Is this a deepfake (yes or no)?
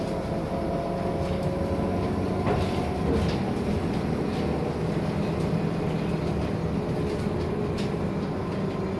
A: no